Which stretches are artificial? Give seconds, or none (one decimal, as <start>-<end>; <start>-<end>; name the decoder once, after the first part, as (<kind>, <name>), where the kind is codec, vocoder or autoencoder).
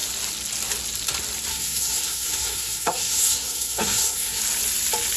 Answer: 1.5-4.4 (codec, SNAC)